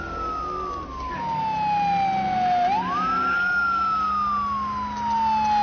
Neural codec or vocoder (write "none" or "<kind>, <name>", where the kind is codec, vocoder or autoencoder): none